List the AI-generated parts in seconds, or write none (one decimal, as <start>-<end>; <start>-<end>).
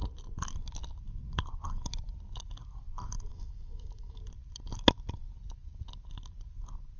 3.3-4.2